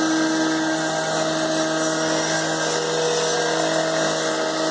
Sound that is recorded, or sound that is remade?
recorded